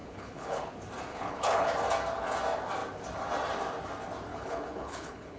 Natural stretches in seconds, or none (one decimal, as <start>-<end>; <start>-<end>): 0.7-1.1; 1.7-4.3

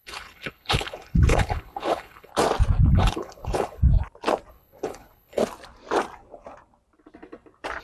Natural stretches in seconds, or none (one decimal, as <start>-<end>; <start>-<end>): 2.3-2.9; 3.8-4.5; 5.4-7.8

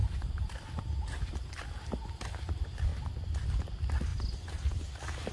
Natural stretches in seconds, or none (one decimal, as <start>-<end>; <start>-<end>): 0.0-5.3

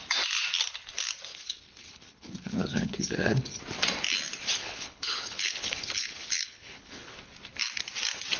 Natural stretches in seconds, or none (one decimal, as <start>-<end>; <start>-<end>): 0.0-1.3; 3.6-4.6; 7.3-8.4